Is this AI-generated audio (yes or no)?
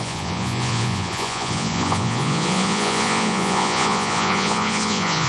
yes